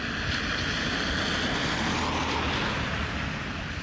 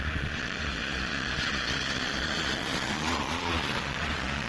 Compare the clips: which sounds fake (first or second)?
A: second